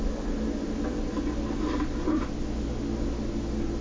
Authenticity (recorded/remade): recorded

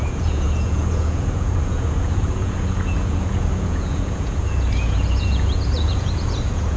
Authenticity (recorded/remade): remade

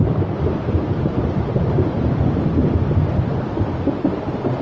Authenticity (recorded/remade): recorded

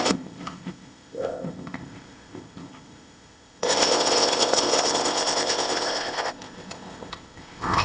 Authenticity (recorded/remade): remade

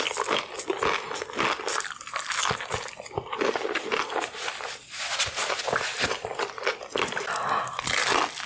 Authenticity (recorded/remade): recorded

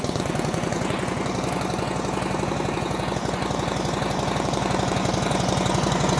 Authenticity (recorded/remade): remade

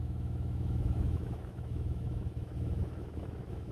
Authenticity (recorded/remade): remade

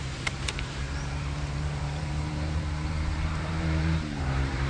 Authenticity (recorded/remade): remade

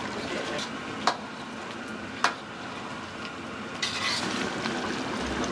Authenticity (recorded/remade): recorded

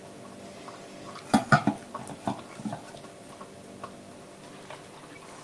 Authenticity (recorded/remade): recorded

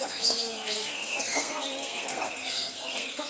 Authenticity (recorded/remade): remade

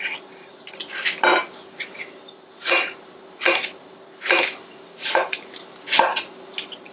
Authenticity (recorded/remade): recorded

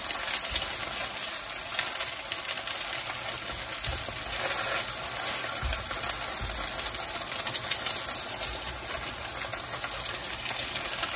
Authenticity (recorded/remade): recorded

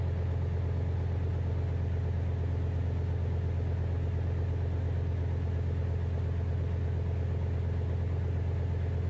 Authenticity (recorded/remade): recorded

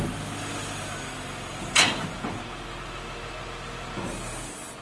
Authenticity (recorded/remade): recorded